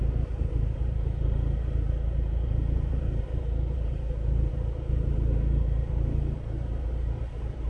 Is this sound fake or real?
fake